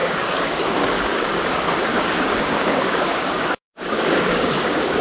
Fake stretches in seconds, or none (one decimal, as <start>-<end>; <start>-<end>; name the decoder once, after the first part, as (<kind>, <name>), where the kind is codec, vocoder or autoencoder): 0.0-5.0 (codec, DAC)